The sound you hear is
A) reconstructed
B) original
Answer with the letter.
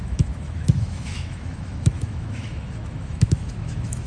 A